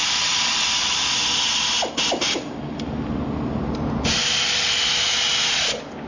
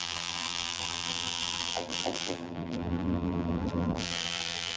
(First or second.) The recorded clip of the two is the first